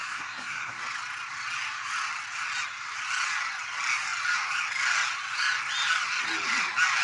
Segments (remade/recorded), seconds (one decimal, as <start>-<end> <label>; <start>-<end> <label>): 0.0-0.8 remade; 0.8-7.0 recorded